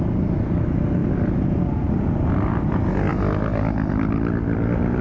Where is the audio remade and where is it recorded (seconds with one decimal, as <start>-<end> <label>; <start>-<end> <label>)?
0.0-5.0 recorded